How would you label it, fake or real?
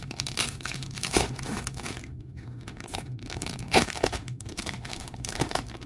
fake